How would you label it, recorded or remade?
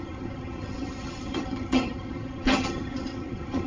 remade